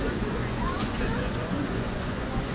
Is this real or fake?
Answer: fake